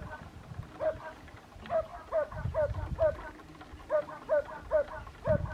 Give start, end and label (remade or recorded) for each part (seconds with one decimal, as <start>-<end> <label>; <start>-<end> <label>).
0.0-1.9 remade; 1.9-4.0 recorded; 4.0-5.5 remade